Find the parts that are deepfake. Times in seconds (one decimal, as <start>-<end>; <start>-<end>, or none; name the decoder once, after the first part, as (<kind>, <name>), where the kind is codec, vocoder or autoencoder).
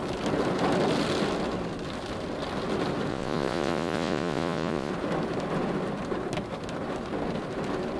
3.1-4.9 (vocoder, Vocos)